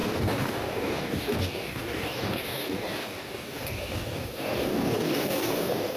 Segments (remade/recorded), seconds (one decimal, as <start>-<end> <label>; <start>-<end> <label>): 0.0-6.0 remade

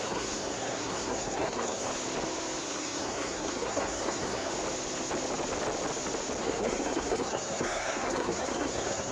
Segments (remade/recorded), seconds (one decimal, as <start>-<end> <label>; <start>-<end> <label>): 0.0-1.9 remade; 1.9-2.6 recorded; 2.6-4.5 remade; 4.5-6.4 recorded; 6.4-9.1 remade

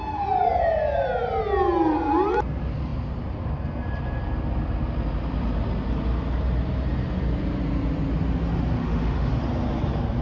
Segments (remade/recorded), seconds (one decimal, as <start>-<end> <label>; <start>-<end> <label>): 0.0-8.8 recorded; 8.8-9.3 remade; 9.3-10.2 recorded

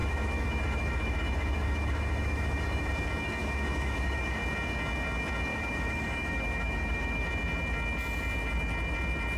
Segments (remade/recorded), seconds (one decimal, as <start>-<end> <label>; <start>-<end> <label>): 0.0-2.9 remade; 2.9-3.4 recorded; 3.4-4.4 remade; 4.4-5.5 recorded; 5.5-7.3 remade; 7.3-9.4 recorded